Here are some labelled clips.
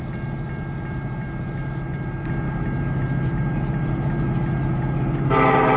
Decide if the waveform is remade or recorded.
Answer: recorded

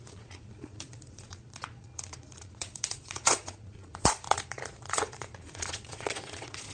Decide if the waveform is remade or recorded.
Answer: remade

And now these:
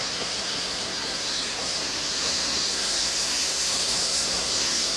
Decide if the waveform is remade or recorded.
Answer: remade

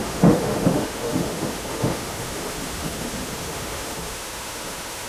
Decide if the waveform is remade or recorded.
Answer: remade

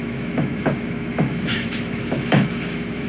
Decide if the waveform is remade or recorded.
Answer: remade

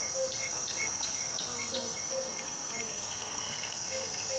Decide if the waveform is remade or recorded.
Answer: remade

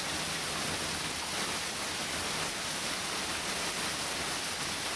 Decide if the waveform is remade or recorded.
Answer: recorded